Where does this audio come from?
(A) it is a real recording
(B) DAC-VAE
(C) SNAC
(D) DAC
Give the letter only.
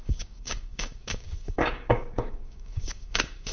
D